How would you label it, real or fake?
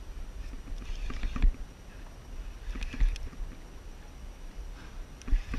real